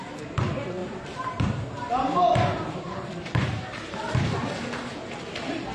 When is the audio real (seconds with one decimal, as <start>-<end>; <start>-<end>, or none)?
0.0-0.8; 4.2-5.7